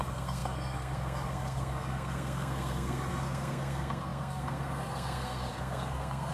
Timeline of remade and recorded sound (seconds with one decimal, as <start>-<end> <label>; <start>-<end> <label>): 0.0-6.3 remade